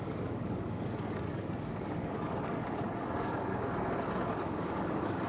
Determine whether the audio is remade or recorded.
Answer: remade